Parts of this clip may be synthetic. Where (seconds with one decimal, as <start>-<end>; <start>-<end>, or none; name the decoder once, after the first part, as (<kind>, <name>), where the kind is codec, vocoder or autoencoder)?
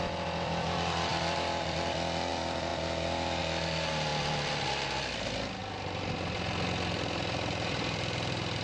none